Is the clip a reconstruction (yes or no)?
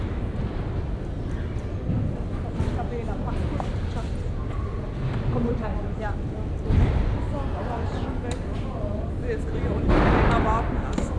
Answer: no